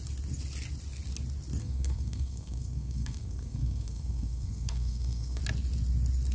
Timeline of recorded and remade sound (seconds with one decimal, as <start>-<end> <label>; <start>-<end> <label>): 0.0-1.6 recorded; 1.6-5.4 remade; 5.4-6.3 recorded